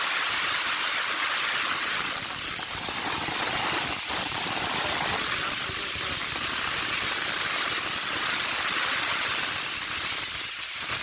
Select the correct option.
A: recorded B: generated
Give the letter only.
A